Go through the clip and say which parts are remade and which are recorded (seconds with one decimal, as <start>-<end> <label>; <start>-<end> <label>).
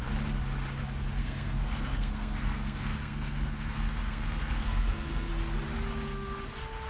0.0-1.2 recorded; 1.2-5.3 remade; 5.3-6.9 recorded